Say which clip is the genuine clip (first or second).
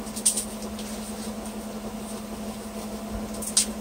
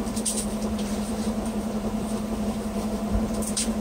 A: first